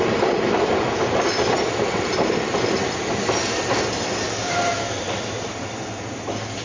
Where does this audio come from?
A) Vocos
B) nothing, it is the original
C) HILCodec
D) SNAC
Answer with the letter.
B